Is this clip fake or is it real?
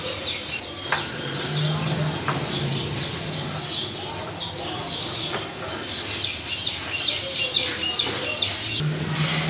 real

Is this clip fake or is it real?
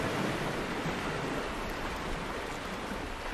real